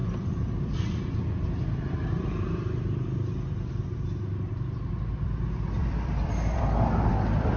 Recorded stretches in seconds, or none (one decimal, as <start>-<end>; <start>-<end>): 1.0-5.8; 7.1-7.6